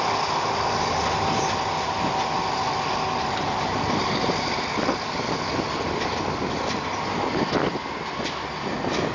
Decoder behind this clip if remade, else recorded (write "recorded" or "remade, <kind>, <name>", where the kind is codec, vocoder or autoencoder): recorded